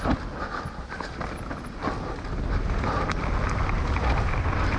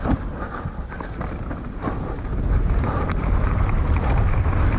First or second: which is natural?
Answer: first